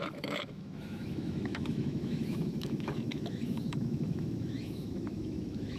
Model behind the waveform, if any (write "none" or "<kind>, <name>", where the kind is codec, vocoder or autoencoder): autoencoder, DAC-VAE